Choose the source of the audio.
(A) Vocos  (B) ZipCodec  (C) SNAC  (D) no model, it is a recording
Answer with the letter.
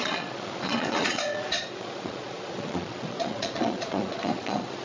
A